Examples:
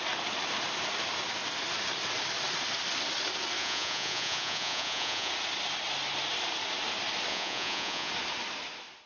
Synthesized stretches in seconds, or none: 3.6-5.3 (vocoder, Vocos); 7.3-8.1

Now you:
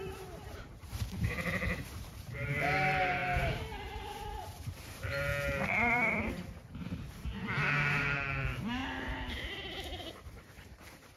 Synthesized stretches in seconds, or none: 0.0-5.3 (vocoder, BigVGAN v2); 5.8-8.8; 10.0-11.2

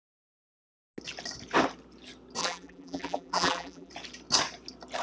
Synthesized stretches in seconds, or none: 2.4-3.9 (vocoder, BigVGAN v2)